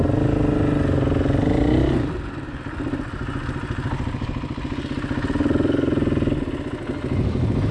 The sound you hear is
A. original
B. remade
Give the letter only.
A